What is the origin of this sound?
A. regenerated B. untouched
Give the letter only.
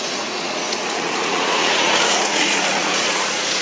A